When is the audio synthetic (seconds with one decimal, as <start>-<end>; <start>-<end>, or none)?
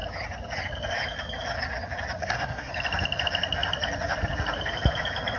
2.2-2.7